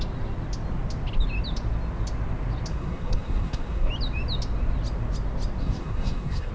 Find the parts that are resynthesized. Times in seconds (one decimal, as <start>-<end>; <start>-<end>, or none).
2.7-3.9; 5.6-6.5